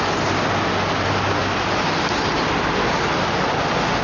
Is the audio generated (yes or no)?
no